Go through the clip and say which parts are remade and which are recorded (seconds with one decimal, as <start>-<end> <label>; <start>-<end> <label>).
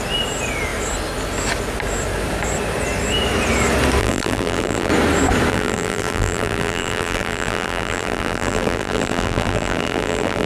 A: 0.0-4.0 recorded; 4.0-4.9 remade; 4.9-5.5 recorded; 5.5-10.5 remade